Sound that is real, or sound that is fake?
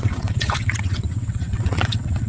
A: fake